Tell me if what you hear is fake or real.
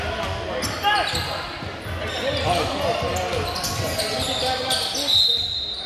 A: real